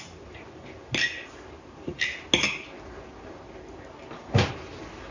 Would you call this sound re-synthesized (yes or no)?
no